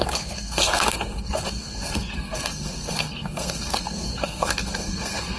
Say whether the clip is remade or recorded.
remade